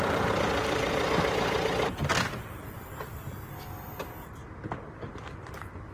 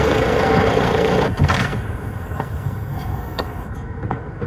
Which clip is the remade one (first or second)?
second